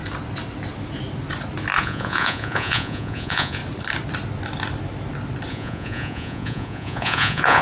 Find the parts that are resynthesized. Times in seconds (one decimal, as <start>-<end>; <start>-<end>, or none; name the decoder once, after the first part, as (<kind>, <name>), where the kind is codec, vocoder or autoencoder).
1.8-3.6 (vocoder, Vocos); 5.5-7.6